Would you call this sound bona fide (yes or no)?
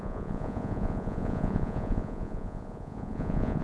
no